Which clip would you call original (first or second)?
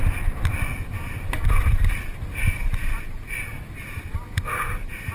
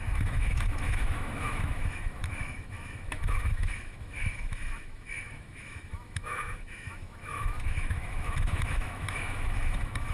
first